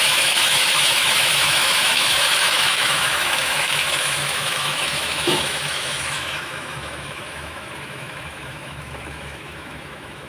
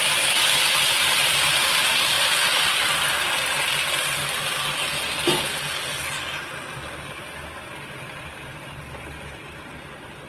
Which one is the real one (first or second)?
second